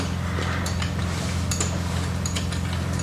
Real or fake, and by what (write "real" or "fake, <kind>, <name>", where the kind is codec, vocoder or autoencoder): real